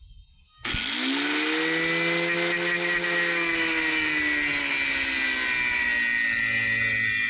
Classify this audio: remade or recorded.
recorded